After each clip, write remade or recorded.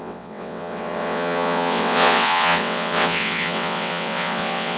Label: remade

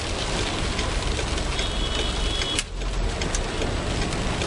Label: recorded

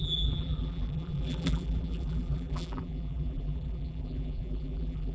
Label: remade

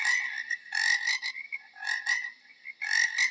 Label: recorded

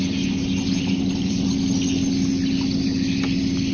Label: recorded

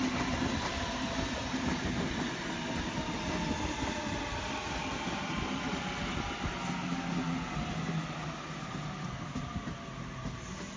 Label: recorded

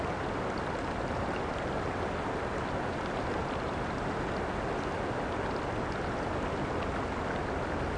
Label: recorded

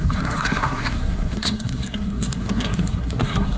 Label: remade